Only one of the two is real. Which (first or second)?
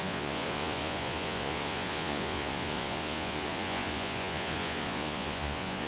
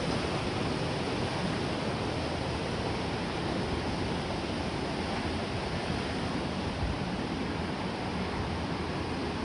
second